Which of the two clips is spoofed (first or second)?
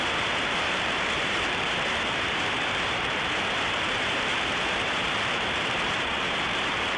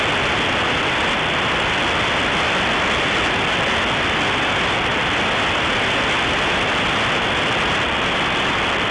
first